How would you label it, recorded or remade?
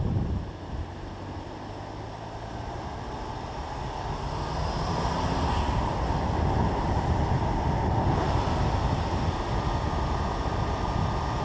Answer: recorded